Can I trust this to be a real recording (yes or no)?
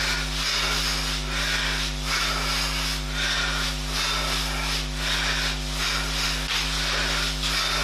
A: yes